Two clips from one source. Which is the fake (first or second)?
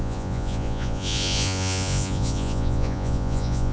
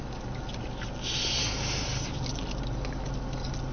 first